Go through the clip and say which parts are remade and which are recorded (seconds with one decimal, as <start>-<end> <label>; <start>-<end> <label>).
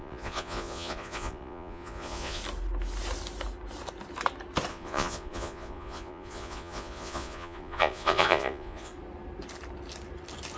0.0-2.4 remade; 2.4-4.7 recorded; 4.7-8.9 remade; 8.9-10.6 recorded